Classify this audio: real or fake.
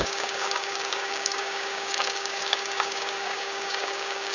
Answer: fake